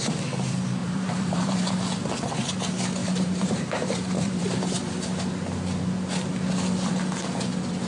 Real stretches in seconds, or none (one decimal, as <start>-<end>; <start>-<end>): 0.0-0.8; 1.7-3.0; 4.7-7.9